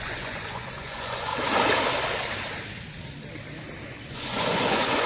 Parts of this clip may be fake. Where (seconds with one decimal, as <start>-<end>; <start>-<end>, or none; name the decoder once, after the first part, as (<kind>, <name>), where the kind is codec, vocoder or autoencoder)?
0.0-1.3 (vocoder, Vocos); 4.1-5.1